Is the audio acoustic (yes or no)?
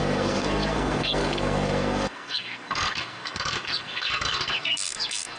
no